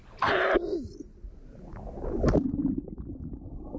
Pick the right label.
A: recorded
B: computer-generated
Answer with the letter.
A